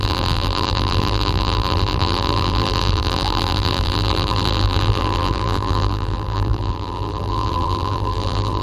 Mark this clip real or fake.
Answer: fake